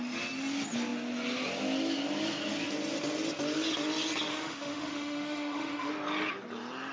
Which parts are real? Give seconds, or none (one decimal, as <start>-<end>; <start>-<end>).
0.0-4.3; 5.9-6.9